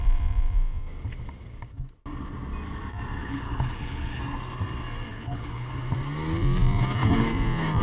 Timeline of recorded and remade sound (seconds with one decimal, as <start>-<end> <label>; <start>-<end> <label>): 0.0-3.2 recorded; 3.2-4.2 remade; 4.2-5.1 recorded; 5.1-5.7 remade; 5.7-7.8 recorded